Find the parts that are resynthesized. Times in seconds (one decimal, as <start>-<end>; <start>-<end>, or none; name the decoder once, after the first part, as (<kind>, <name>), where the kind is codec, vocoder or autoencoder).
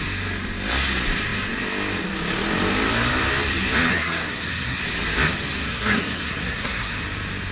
3.9-4.8 (codec, SNAC); 5.6-7.0